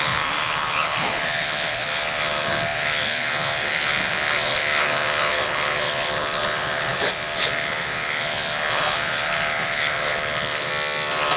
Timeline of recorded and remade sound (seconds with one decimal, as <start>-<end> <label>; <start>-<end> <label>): 0.0-10.7 remade; 10.7-11.4 recorded